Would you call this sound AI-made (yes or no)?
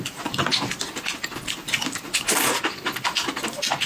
no